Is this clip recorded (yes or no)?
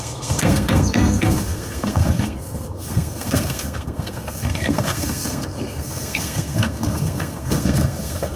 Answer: no